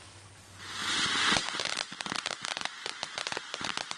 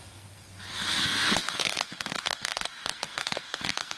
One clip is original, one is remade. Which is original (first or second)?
first